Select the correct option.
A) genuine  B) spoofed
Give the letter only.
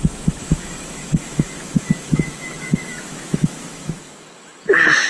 B